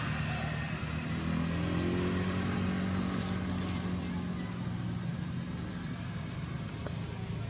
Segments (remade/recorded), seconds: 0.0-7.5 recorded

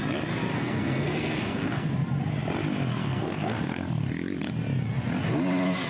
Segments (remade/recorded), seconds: 0.0-0.5 recorded; 0.5-1.9 remade; 1.9-3.0 recorded; 3.0-3.8 remade; 3.8-5.9 recorded

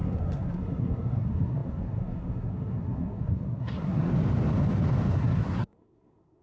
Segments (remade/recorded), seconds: 0.0-4.1 remade; 4.1-5.1 recorded; 5.1-6.4 remade

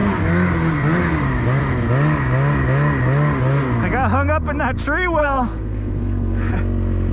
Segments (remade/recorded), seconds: 0.0-5.2 recorded; 5.2-6.5 remade; 6.5-7.1 recorded

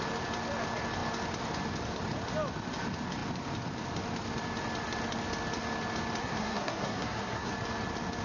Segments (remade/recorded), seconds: 0.0-6.2 recorded; 6.2-7.5 remade; 7.5-8.2 recorded

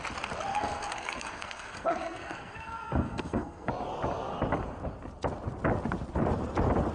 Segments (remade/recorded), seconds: 0.0-0.5 recorded; 0.5-3.7 remade; 3.7-6.9 recorded

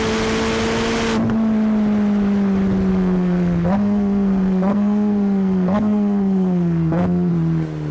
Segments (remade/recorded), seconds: 0.0-2.9 recorded; 2.9-7.3 remade; 7.3-7.9 recorded

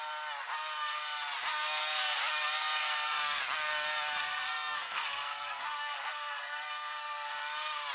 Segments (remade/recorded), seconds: 0.0-1.5 recorded; 1.5-2.2 remade; 2.2-2.8 recorded; 2.8-3.4 remade; 3.4-4.2 recorded; 4.2-7.3 remade; 7.3-7.9 recorded